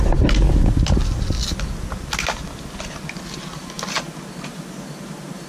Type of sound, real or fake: real